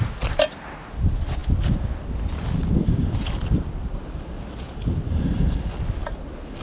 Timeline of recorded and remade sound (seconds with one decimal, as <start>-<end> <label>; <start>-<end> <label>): 0.0-6.6 recorded